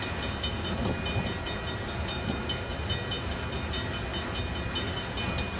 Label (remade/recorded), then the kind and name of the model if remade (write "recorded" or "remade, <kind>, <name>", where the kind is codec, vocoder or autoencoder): recorded